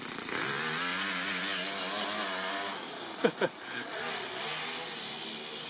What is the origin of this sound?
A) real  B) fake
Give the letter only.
A